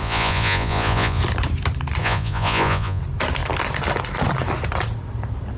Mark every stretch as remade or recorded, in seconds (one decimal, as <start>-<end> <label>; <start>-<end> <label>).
0.0-1.2 remade; 1.2-2.0 recorded; 2.0-3.0 remade; 3.0-5.6 recorded